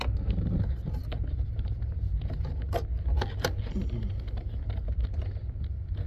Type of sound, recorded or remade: recorded